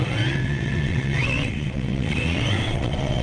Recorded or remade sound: remade